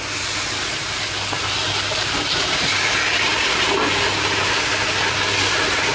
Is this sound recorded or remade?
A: recorded